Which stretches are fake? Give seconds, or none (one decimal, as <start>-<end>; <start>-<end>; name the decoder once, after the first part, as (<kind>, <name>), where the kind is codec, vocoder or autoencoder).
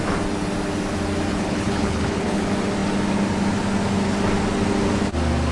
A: 1.3-2.4 (codec, HILCodec)